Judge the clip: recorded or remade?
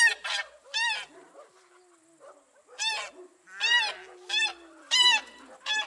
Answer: recorded